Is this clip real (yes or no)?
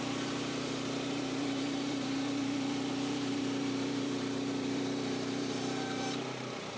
no